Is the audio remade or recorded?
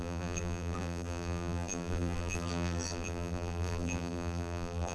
remade